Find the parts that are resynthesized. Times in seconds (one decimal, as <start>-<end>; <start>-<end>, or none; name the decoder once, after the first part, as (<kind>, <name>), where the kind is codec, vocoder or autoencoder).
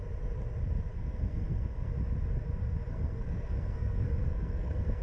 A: 0.9-1.9 (codec, SNAC); 2.9-5.0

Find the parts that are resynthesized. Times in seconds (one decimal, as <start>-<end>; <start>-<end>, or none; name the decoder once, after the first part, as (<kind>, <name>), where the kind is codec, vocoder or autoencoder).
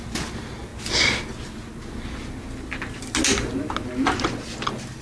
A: none